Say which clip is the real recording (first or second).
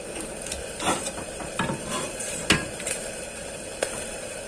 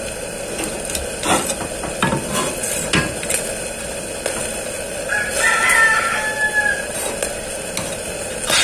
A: second